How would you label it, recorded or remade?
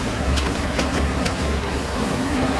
remade